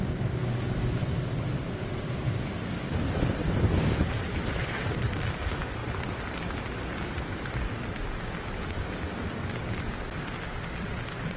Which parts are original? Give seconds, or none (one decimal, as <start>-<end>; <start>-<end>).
0.4-2.0